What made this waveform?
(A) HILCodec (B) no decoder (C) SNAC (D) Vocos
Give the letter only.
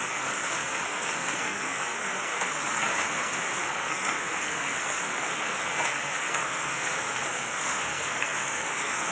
C